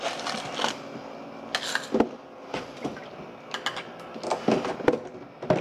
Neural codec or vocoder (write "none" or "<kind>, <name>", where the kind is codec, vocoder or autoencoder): none